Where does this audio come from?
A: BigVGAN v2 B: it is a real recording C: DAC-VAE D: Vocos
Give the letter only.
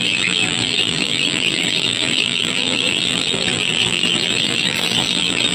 A